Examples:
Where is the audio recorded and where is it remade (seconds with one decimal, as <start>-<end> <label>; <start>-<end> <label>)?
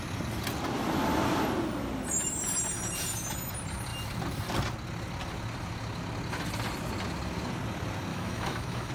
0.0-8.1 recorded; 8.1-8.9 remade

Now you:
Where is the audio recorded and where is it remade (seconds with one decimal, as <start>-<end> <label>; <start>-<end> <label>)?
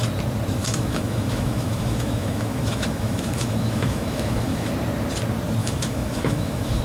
0.0-0.6 recorded; 0.6-4.7 remade; 4.7-5.6 recorded; 5.6-6.8 remade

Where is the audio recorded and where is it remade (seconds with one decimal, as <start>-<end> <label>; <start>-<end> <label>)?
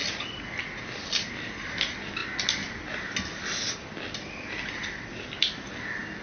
0.0-6.2 recorded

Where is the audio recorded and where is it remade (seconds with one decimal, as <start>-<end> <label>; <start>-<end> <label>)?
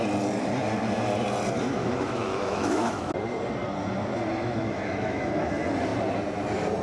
0.0-1.8 recorded; 1.8-3.1 remade; 3.1-4.4 recorded; 4.4-5.3 remade; 5.3-6.8 recorded